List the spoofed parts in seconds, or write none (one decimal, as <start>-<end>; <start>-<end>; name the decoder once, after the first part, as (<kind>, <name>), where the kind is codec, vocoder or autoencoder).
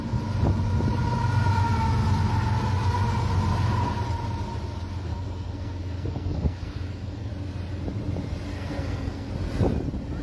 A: 5.1-7.3 (codec, SNAC); 8.5-9.3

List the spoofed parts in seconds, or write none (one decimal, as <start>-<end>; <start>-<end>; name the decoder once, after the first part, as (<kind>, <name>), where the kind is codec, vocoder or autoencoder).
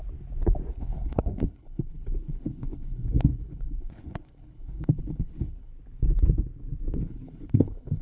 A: 0.7-5.7 (codec, HILCodec); 7.0-8.0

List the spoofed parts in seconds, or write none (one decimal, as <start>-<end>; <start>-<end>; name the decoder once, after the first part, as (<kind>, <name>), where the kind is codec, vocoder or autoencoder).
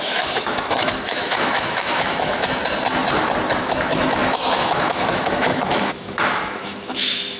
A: 0.0-2.6 (autoencoder, DAC-VAE); 3.6-7.4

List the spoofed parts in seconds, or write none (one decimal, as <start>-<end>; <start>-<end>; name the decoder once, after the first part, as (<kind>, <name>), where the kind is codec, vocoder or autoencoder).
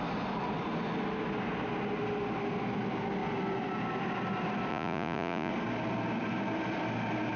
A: 4.7-5.5 (vocoder, Vocos)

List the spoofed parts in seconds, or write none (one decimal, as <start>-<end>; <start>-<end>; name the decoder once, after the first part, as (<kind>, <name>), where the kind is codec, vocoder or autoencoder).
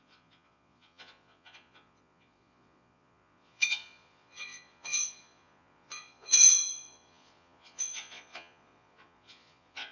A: 0.0-9.9 (vocoder, Vocos)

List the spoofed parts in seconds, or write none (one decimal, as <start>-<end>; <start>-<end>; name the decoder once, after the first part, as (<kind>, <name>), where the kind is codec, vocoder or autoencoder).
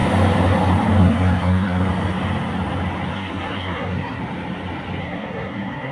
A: 1.0-1.9 (codec, SNAC); 3.1-4.2; 5.0-5.9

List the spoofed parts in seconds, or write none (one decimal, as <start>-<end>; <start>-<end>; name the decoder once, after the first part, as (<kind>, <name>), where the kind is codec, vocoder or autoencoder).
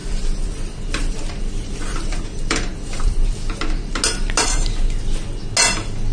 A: 0.0-3.3 (vocoder, BigVGAN v2)